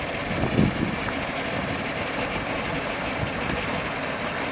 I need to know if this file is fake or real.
real